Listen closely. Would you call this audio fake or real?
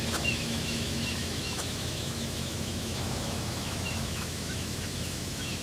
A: fake